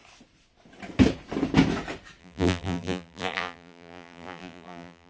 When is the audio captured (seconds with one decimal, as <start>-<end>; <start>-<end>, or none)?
0.0-2.2